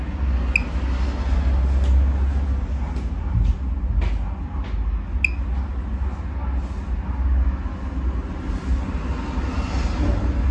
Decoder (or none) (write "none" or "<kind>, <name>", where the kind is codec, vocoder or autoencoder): none